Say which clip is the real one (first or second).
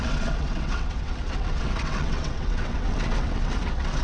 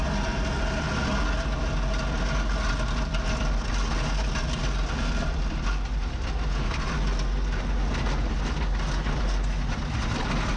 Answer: second